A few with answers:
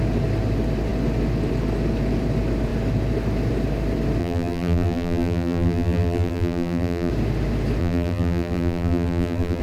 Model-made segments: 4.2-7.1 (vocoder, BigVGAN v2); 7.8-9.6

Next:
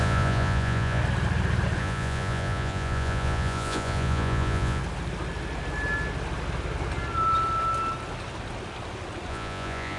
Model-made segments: 0.0-1.0 (vocoder, Vocos); 1.8-4.8; 9.3-10.0

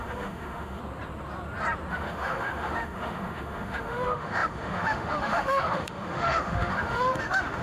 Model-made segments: 0.0-0.8 (autoencoder, DAC-VAE); 1.9-7.6

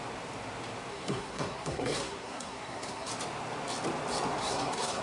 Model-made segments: 0.9-3.1 (codec, SNAC); 4.4-5.0

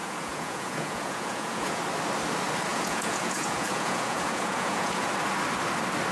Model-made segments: 0.0-1.8 (vocoder, Vocos); 2.7-5.1

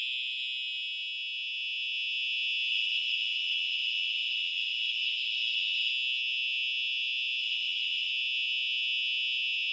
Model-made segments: 2.7-5.9 (vocoder, WaveNeXt); 7.4-8.1